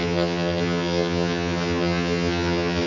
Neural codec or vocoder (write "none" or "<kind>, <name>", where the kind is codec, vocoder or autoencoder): vocoder, HiFi-GAN